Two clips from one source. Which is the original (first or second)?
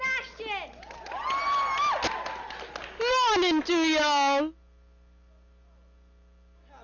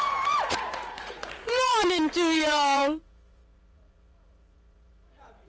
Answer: first